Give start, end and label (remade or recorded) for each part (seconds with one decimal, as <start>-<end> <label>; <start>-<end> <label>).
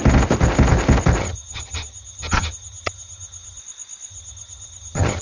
0.0-1.2 recorded; 1.2-3.6 remade; 3.6-4.1 recorded; 4.1-5.2 remade